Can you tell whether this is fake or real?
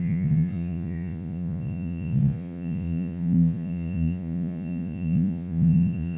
fake